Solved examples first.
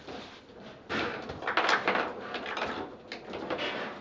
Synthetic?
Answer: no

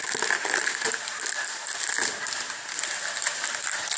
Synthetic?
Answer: no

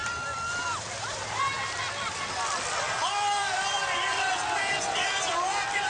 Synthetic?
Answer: yes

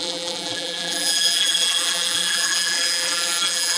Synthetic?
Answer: yes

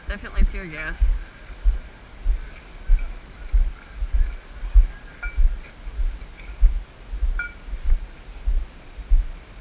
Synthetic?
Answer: no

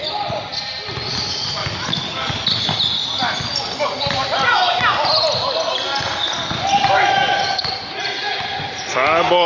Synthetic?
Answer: no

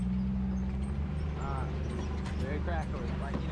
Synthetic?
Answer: no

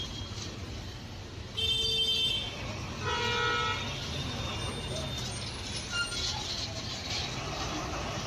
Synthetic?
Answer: no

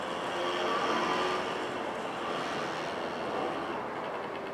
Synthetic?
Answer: no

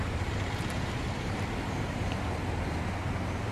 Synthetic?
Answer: yes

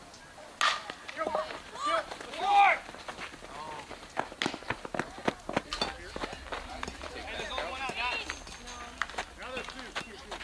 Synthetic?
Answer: no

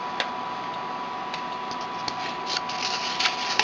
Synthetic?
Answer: no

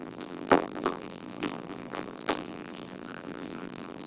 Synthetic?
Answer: yes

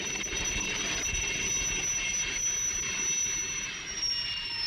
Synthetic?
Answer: yes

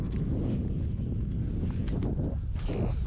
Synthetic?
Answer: no